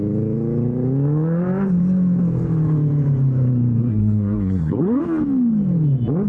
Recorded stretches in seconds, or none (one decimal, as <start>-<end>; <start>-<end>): 0.0-3.8; 5.0-6.3